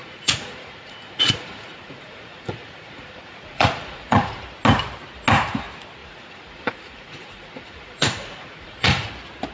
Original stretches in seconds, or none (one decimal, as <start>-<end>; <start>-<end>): 4.4-6.0; 9.1-9.5